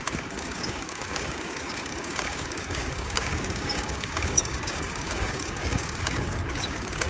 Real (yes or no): no